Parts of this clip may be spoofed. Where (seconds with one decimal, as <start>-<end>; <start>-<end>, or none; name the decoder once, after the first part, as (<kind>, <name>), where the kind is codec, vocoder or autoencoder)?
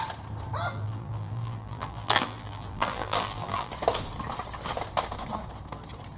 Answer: 0.7-3.7 (vocoder, BigVGAN v2)